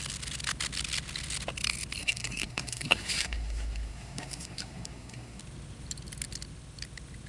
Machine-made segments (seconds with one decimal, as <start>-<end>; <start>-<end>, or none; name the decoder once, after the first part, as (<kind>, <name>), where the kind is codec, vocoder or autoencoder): 2.0-5.4 (codec, SNAC)

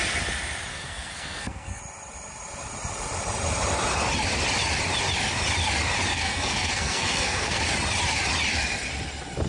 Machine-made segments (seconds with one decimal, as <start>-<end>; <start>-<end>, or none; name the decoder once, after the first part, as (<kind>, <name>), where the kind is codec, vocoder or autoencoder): 0.7-1.8 (codec, SNAC); 6.1-7.6

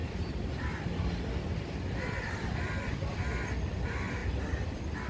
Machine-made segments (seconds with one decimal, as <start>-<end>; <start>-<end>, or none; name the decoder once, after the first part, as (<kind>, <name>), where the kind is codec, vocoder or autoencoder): none

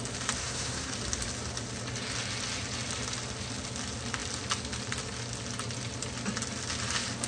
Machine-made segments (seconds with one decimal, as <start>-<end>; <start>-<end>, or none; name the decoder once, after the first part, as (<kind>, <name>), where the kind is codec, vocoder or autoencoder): 0.4-0.9 (codec, SNAC)

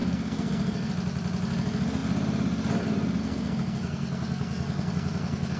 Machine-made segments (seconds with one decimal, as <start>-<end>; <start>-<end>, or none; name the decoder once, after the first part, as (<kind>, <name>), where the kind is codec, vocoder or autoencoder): 0.0-0.9 (codec, SNAC); 3.2-5.6

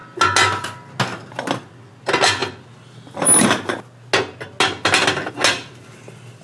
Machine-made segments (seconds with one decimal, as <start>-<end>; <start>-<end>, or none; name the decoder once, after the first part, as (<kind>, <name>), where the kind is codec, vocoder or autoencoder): none

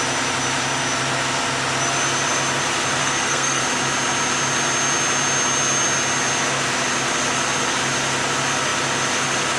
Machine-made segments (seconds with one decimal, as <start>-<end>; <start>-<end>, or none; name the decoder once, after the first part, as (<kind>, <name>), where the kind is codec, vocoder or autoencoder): 3.0-3.6 (codec, SNAC)

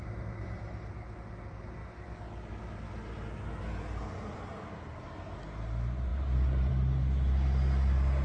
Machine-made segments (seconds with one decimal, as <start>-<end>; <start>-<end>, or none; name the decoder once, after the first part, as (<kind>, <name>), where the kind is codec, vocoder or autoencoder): none